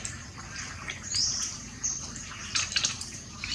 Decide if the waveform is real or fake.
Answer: fake